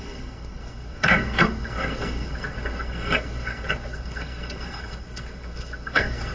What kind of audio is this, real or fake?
fake